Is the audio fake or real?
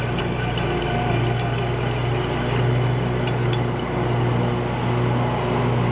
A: real